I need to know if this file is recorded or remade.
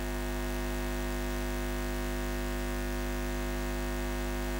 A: recorded